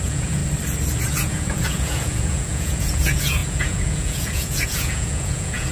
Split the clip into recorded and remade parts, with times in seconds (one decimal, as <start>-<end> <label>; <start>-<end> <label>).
0.0-0.4 remade; 0.4-1.1 recorded; 1.1-5.7 remade